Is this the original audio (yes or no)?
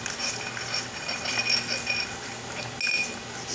yes